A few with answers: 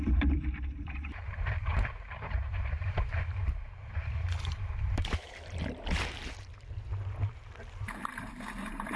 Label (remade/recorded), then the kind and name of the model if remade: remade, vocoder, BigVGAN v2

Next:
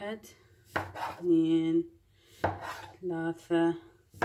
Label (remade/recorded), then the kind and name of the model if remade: recorded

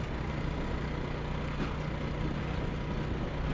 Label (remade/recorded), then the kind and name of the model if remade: recorded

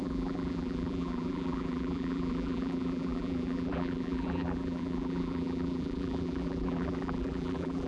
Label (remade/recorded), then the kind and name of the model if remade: remade, vocoder, BigVGAN v2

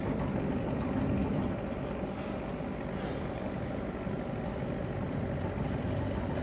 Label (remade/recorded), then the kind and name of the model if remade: recorded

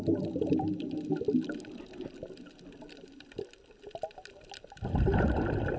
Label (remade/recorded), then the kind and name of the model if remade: recorded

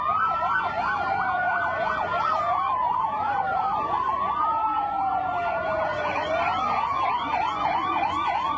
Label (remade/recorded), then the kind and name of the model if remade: remade, vocoder, Vocos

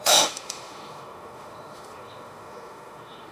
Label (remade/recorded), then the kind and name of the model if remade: remade, autoencoder, DAC-VAE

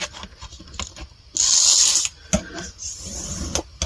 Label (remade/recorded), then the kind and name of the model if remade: recorded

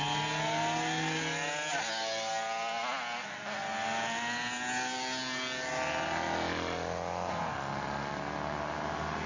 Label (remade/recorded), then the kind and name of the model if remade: recorded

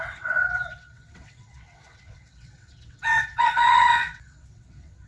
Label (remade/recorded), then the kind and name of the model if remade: remade, vocoder, WaveNeXt